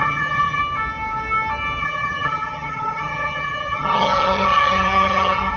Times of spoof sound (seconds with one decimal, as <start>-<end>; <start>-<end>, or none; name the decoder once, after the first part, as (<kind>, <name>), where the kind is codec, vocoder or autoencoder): 0.0-0.6 (vocoder, HiFi-GAN); 1.8-5.6